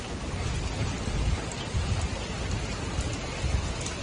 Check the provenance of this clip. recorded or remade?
recorded